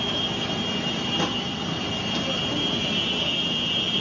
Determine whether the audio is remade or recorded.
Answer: recorded